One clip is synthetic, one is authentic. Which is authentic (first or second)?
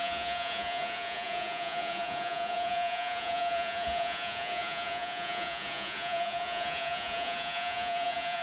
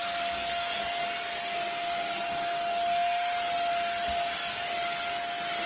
second